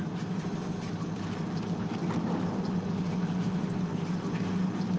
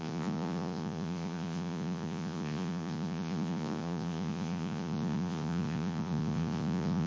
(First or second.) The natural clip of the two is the first